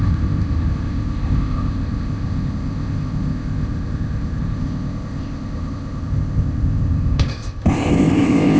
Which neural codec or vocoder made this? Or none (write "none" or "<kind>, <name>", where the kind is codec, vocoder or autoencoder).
codec, ZipCodec